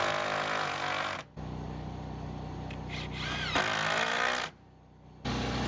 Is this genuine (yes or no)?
yes